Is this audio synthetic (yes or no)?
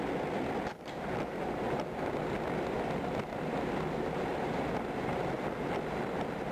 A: no